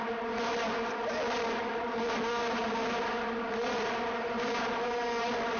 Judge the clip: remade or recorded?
recorded